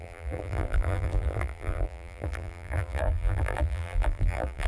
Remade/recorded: remade